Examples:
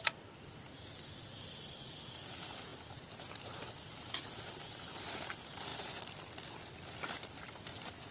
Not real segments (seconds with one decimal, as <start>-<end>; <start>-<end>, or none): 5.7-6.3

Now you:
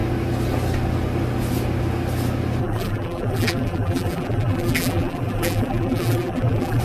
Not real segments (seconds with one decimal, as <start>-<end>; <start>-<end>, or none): 2.6-6.8

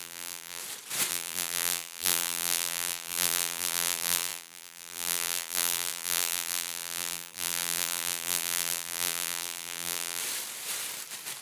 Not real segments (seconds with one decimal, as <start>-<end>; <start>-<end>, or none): 0.0-0.6; 1.1-10.2

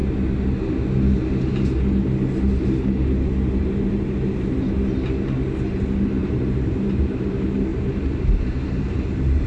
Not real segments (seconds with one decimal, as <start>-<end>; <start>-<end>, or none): 6.2-7.3; 7.7-9.5